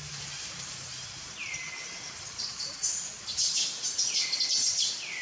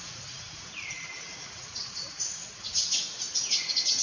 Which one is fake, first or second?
second